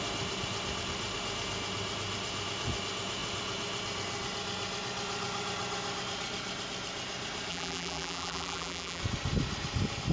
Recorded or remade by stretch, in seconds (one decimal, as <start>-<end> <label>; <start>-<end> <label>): 0.0-7.5 recorded; 7.5-9.0 remade; 9.0-10.1 recorded

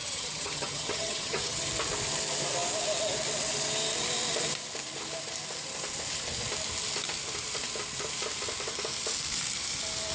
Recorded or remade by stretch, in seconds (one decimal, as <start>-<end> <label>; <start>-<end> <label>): 0.0-1.7 remade; 1.7-10.1 recorded

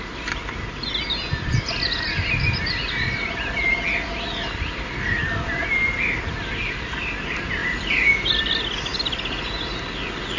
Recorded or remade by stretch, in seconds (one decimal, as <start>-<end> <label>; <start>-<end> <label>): 0.0-7.6 recorded; 7.6-8.5 remade; 8.5-10.4 recorded

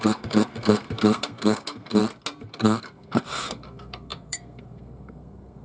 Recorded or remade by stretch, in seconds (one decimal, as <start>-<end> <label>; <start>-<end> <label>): 0.0-2.0 remade; 2.0-2.5 recorded; 2.5-5.6 remade

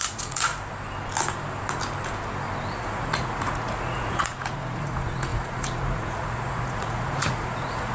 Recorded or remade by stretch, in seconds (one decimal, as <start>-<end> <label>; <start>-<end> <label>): 0.0-0.5 remade; 0.5-2.7 recorded; 2.7-7.9 remade

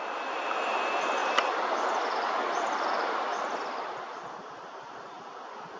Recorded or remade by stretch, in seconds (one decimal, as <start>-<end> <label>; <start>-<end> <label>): 0.0-5.8 recorded